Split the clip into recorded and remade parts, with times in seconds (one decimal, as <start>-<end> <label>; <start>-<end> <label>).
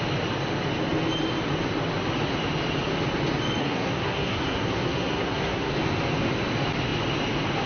0.0-3.6 recorded; 3.6-5.7 remade; 5.7-7.7 recorded